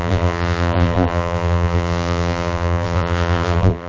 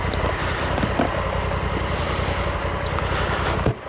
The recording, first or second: second